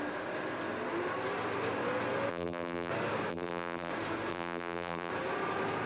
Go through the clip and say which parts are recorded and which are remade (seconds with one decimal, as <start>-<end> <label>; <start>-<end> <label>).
0.0-2.3 recorded; 2.3-2.9 remade; 2.9-3.3 recorded; 3.3-3.9 remade; 3.9-4.3 recorded; 4.3-5.1 remade; 5.1-5.9 recorded